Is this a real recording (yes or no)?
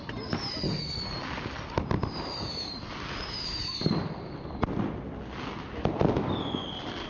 yes